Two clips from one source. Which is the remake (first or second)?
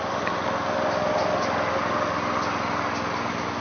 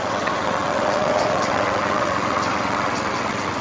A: second